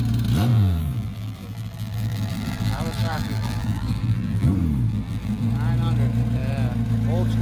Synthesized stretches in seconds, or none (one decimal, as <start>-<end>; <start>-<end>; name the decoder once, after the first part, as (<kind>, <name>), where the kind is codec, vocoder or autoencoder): 0.5-4.5 (vocoder, BigVGAN v2); 4.9-5.5